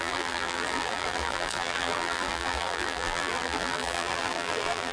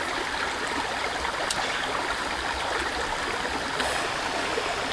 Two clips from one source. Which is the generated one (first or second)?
first